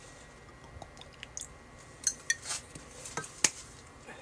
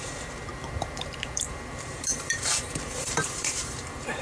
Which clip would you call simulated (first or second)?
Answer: second